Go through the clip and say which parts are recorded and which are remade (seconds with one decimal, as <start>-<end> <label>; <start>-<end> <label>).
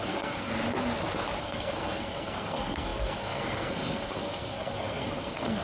0.0-0.5 remade; 0.5-1.4 recorded; 1.4-5.6 remade